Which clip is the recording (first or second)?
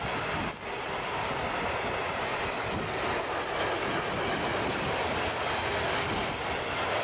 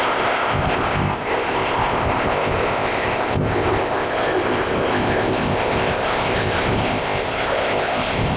first